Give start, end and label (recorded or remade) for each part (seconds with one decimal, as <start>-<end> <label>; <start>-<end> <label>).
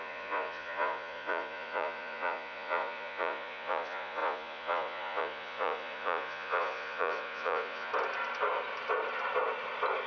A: 0.0-7.9 remade; 7.9-10.1 recorded